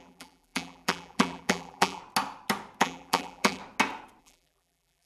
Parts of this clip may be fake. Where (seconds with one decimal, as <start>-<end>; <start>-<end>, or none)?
0.0-2.0; 2.8-3.6; 4.2-5.1